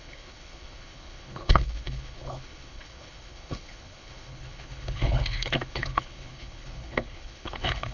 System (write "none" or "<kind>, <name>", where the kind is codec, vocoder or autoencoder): codec, HILCodec